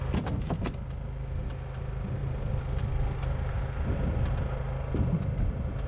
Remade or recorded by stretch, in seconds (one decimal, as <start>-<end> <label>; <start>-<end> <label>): 0.0-5.9 recorded